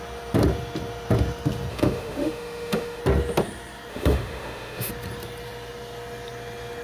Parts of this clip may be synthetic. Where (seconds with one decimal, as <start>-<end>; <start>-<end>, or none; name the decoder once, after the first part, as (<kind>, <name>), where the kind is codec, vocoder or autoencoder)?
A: 1.7-3.0 (autoencoder, DAC-VAE); 3.9-4.9